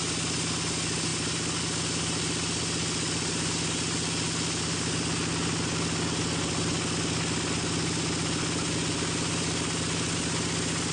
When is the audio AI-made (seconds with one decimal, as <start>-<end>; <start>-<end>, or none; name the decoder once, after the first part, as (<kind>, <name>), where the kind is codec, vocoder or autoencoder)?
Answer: none